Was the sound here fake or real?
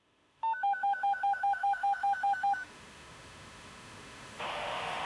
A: fake